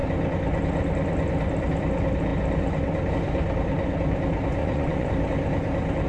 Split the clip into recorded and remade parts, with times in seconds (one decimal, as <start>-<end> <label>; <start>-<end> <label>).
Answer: 0.0-4.6 recorded; 4.6-5.1 remade; 5.1-6.1 recorded